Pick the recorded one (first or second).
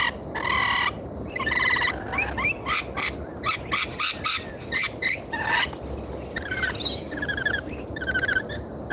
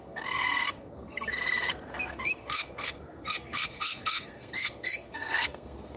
first